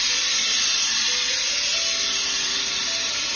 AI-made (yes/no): no